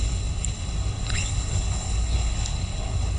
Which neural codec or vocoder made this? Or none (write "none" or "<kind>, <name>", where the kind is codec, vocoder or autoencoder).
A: codec, HILCodec